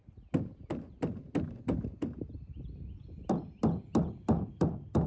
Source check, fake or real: real